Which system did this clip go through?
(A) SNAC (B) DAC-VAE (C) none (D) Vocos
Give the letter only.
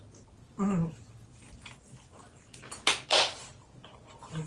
C